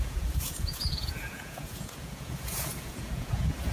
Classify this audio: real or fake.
fake